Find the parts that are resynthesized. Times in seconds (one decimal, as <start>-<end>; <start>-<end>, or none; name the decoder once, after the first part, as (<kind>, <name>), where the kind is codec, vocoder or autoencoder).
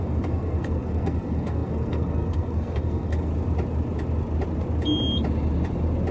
0.0-3.3 (codec, SNAC)